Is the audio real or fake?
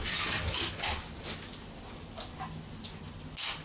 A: real